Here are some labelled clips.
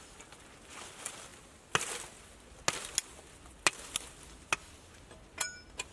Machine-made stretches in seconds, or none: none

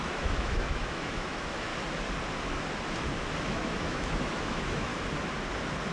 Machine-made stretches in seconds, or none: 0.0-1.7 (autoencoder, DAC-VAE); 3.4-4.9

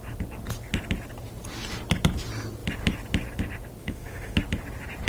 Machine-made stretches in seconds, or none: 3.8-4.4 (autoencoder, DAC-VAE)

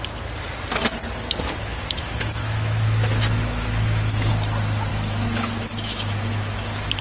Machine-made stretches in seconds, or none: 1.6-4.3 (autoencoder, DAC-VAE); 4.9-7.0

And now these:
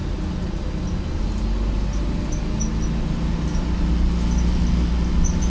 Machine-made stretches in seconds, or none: none

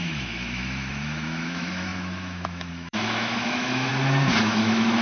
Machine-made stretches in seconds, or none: 0.0-3.9 (autoencoder, DAC-VAE); 4.4-5.0